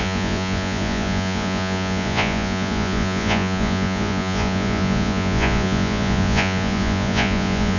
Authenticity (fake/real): fake